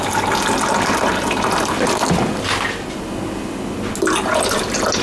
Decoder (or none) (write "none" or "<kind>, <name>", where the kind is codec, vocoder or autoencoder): none